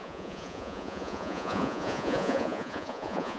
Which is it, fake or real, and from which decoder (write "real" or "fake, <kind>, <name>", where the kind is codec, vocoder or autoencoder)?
fake, vocoder, Vocos